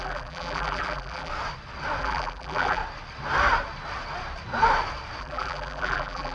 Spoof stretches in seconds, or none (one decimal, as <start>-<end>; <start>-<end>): 0.0-1.3; 2.0-2.8; 5.2-6.3